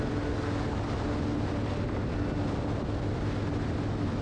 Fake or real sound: real